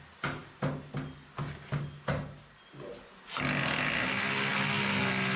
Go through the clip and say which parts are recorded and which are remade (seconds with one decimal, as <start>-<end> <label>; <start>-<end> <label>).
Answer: 0.0-5.4 recorded